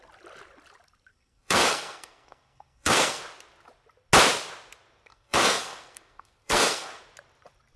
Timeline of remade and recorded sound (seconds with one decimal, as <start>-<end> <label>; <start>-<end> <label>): 0.0-1.1 recorded; 1.1-3.2 remade; 3.2-5.1 recorded; 5.1-7.0 remade; 7.0-7.8 recorded

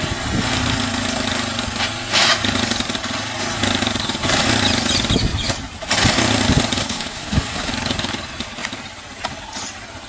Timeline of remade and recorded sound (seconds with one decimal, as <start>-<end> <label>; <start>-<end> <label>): 0.0-6.8 recorded; 6.8-7.7 remade; 7.7-10.1 recorded

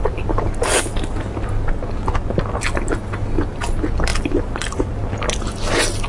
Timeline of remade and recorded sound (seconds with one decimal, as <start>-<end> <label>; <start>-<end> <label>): 0.0-0.9 remade; 0.9-4.1 recorded; 4.1-5.3 remade; 5.3-6.1 recorded

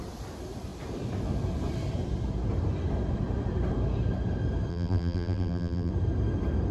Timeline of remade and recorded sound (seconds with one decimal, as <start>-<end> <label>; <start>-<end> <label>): 0.0-4.7 recorded; 4.7-5.9 remade; 5.9-6.7 recorded